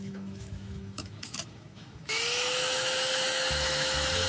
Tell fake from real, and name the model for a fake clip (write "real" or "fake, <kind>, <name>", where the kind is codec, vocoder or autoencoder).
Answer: fake, autoencoder, DAC-VAE